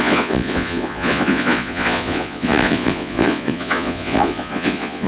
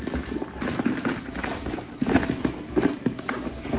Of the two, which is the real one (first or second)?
second